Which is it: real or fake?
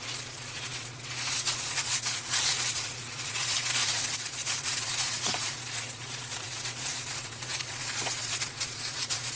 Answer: fake